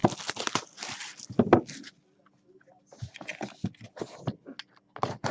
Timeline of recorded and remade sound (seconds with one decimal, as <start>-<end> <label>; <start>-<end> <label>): 0.0-5.3 recorded